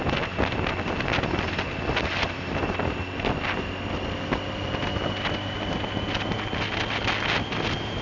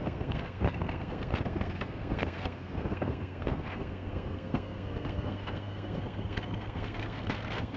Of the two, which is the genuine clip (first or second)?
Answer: first